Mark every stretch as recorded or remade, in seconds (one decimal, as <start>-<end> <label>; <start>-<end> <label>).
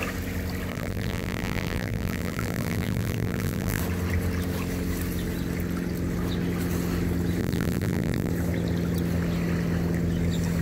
0.0-0.7 recorded; 0.7-3.8 remade; 3.8-7.4 recorded; 7.4-8.3 remade; 8.3-10.6 recorded